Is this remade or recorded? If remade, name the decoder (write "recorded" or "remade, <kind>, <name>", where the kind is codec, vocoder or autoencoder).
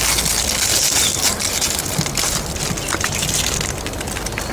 recorded